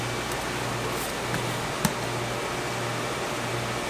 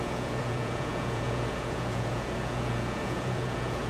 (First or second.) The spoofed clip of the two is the second